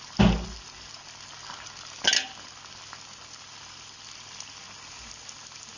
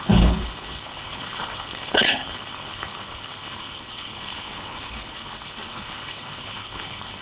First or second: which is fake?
second